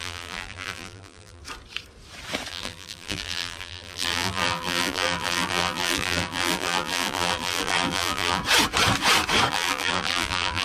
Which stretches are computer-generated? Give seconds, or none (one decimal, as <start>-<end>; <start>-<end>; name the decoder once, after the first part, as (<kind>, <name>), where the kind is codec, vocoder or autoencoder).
0.0-1.4 (vocoder, BigVGAN v2); 2.5-8.4; 9.5-10.6